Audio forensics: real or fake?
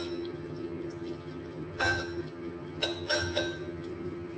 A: fake